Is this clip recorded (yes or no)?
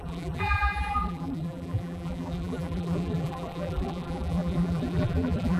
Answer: no